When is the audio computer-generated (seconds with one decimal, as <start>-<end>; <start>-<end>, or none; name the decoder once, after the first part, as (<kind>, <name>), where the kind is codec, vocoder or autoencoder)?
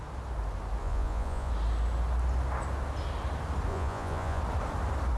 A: 0.8-1.5 (vocoder, Vocos); 3.7-4.4